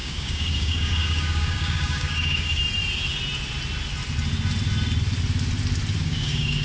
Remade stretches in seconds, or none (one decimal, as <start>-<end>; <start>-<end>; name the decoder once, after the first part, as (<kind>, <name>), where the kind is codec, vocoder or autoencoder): 0.0-2.6 (codec, DAC); 6.0-6.6